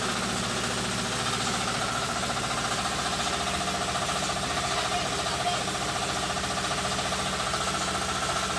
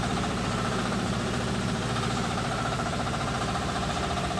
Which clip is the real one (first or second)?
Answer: first